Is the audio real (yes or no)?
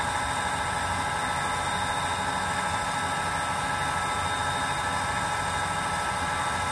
yes